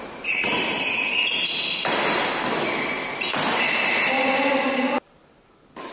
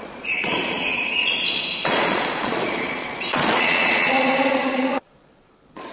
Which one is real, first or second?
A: first